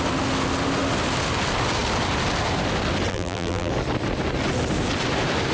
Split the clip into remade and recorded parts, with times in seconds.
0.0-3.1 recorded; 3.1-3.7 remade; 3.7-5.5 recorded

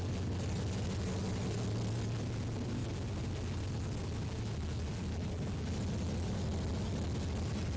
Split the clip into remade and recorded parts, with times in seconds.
0.0-7.8 recorded

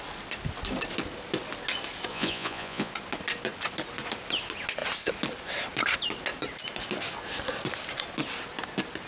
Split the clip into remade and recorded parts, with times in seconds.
0.0-2.1 recorded; 2.1-2.9 remade; 2.9-9.1 recorded

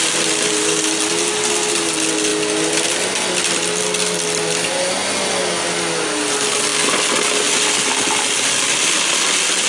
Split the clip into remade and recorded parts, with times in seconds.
0.0-9.7 recorded

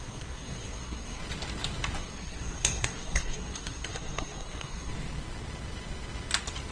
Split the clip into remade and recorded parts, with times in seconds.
0.0-1.2 remade; 1.2-2.0 recorded; 2.0-4.9 remade; 4.9-6.7 recorded

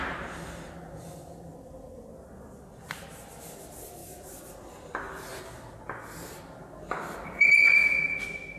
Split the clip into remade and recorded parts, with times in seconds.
0.0-8.6 recorded

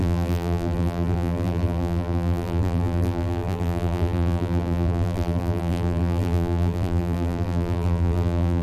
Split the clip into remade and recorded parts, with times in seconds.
0.0-8.6 remade